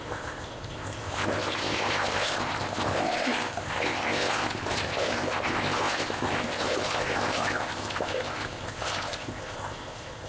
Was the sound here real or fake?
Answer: fake